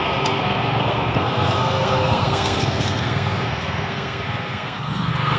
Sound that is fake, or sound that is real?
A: fake